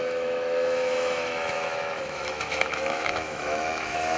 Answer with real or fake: fake